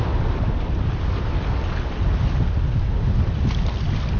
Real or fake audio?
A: real